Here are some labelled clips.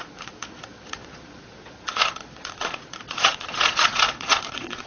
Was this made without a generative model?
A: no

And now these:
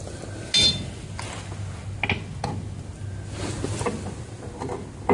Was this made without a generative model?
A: yes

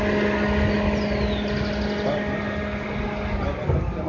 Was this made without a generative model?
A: yes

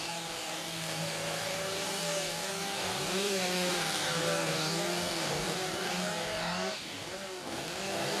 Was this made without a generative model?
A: no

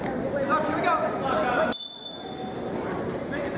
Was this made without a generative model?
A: yes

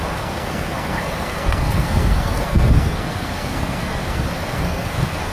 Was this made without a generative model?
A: no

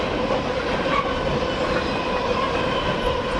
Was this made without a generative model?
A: yes